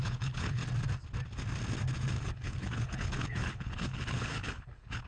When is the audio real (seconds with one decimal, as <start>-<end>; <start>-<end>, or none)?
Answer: 0.6-2.2